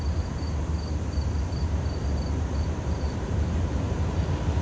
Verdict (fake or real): fake